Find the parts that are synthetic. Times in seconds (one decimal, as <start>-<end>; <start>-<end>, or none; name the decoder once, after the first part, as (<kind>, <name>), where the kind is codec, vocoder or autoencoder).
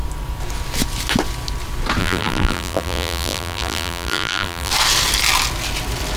2.0-4.7 (vocoder, BigVGAN v2)